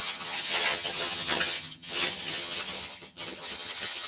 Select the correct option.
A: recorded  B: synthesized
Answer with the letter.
B